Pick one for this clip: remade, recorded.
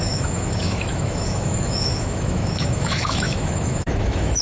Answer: remade